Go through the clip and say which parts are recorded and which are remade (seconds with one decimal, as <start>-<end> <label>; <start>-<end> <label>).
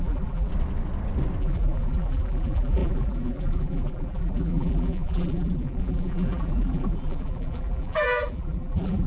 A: 0.0-0.5 remade; 0.5-1.4 recorded; 1.4-9.1 remade